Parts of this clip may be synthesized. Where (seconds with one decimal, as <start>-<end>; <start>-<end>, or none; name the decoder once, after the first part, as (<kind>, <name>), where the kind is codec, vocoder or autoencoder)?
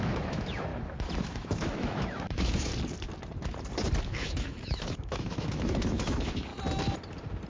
0.0-0.7 (autoencoder, DAC-VAE); 1.2-2.7; 4.0-6.5